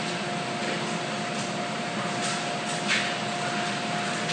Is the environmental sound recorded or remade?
recorded